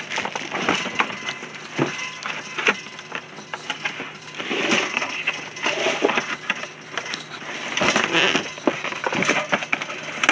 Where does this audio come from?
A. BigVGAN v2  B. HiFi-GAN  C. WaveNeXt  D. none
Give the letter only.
D